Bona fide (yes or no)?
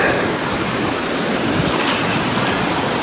yes